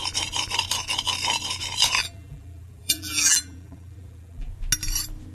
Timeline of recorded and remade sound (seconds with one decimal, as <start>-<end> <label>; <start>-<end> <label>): 0.0-2.0 recorded; 2.0-4.5 remade; 4.5-5.3 recorded